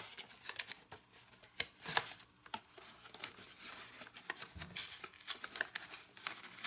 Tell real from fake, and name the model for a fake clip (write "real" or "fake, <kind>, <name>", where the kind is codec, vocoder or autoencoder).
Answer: real